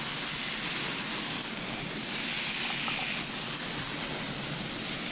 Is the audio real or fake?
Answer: real